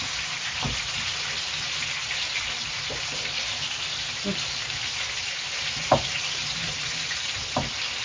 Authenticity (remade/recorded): recorded